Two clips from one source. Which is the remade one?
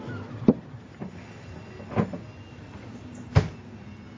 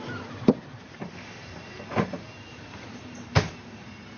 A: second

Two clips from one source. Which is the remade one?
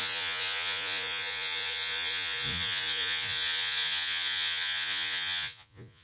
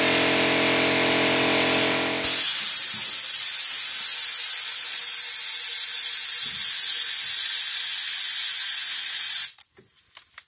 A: first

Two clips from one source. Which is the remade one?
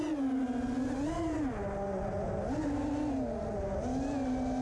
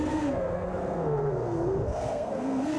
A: second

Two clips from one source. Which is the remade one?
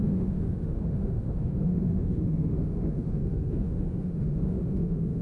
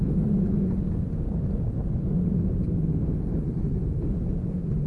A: first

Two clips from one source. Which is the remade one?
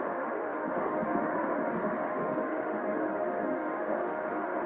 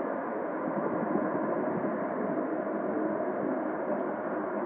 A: first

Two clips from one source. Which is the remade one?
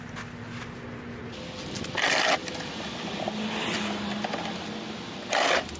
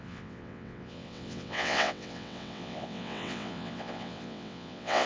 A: second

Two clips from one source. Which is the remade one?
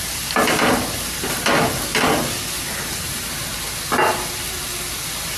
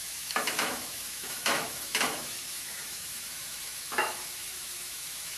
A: second